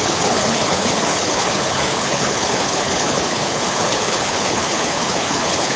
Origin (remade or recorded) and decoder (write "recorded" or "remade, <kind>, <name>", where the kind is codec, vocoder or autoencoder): remade, codec, HILCodec